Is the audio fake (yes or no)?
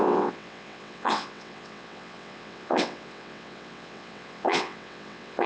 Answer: yes